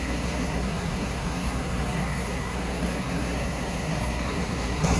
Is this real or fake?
fake